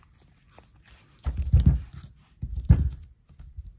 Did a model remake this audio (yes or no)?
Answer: yes